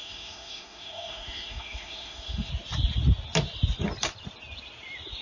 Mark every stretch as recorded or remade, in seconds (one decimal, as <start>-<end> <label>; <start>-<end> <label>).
0.0-2.5 remade; 2.5-5.2 recorded